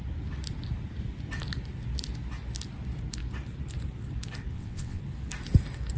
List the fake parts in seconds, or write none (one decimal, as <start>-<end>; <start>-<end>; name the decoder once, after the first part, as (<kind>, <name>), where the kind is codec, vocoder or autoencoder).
4.5-5.0 (vocoder, WaveNeXt)